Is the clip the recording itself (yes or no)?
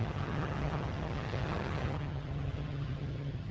no